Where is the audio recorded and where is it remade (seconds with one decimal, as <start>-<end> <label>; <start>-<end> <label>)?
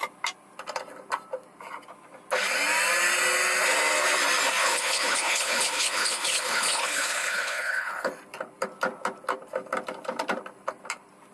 0.0-4.6 recorded; 4.6-8.1 remade; 8.1-11.3 recorded